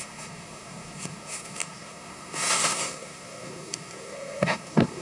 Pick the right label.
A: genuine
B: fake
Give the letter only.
B